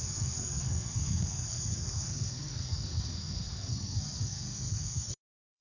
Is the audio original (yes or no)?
no